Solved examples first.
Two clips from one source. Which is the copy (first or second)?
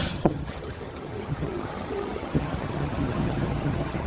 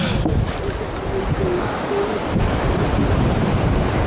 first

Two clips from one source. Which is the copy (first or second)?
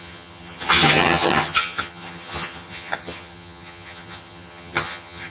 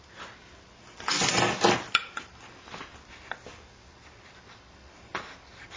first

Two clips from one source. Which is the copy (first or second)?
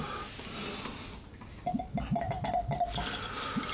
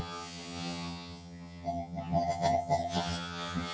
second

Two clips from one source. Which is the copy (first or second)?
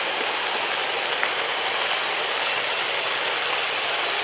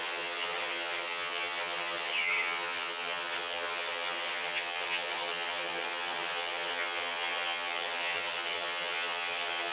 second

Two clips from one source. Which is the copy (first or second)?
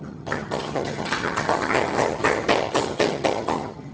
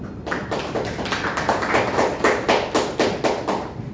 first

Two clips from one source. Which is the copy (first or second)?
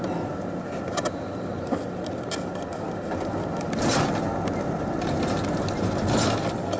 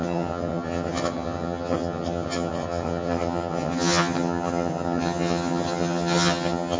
second